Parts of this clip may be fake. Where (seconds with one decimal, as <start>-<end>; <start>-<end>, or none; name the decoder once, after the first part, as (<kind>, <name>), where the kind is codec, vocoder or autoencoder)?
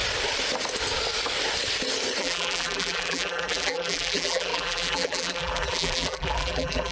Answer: 2.2-6.9 (vocoder, BigVGAN v2)